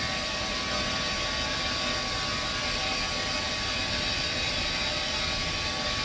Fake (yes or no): no